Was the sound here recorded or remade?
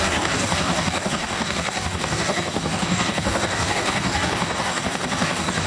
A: remade